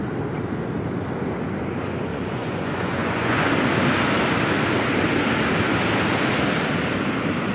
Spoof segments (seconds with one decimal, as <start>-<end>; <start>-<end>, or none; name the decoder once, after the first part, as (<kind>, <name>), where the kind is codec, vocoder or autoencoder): 2.1-3.5 (vocoder, Vocos)